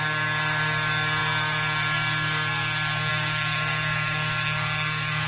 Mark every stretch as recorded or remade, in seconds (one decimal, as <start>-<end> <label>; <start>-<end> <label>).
0.0-5.3 remade